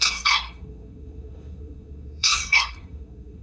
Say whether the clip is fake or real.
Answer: fake